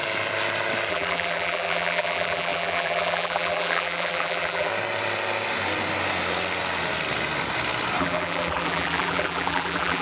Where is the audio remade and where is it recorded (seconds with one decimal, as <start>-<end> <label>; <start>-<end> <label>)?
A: 0.0-0.9 recorded; 0.9-4.7 remade; 4.7-8.0 recorded; 8.0-10.0 remade